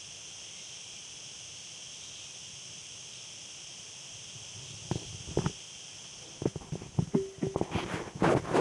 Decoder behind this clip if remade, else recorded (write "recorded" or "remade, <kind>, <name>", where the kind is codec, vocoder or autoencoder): recorded